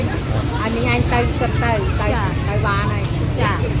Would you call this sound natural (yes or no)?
yes